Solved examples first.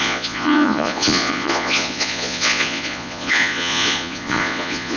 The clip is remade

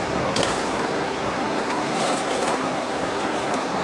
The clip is remade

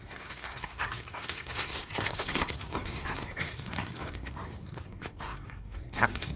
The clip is remade